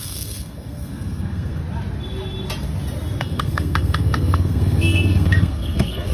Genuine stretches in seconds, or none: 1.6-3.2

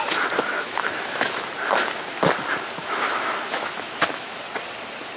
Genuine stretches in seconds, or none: 0.0-0.5; 1.4-2.8; 4.4-5.2

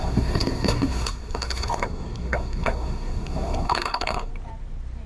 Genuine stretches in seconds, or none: 4.3-5.1